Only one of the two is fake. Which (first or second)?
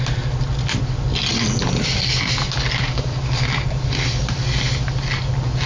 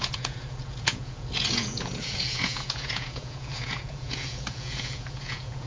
second